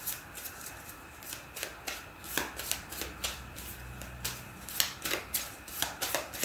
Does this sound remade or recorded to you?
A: remade